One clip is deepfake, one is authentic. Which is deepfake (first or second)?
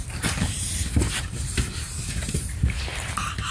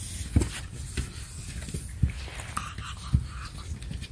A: first